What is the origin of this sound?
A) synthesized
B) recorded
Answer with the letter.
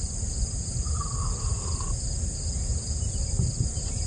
B